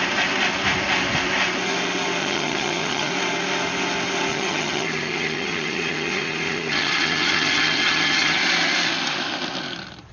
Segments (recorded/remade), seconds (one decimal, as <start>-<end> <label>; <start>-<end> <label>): 0.0-2.2 recorded; 2.2-3.1 remade; 3.1-4.3 recorded; 4.3-8.4 remade; 8.4-10.1 recorded